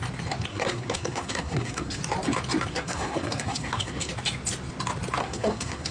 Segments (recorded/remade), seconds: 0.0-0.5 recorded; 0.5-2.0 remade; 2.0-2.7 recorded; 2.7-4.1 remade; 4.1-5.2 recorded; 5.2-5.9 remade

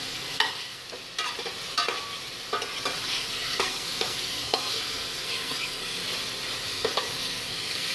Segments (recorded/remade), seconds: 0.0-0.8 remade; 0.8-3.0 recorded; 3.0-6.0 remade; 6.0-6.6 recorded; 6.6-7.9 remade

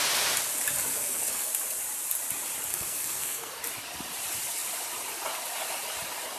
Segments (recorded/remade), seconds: 0.0-0.9 recorded; 0.9-1.5 remade; 1.5-2.7 recorded; 2.7-3.6 remade; 3.6-6.4 recorded